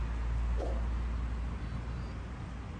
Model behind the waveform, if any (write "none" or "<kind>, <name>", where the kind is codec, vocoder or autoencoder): none